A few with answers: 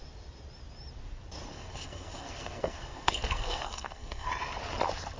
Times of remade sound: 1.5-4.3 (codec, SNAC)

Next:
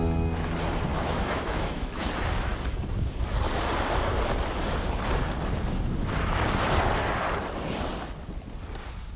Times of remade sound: 0.9-2.1 (autoencoder, DAC-VAE)